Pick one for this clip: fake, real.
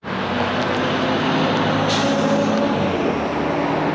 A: real